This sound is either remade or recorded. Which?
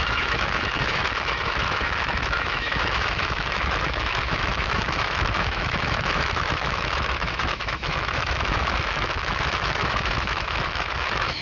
remade